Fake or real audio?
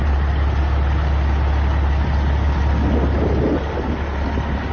real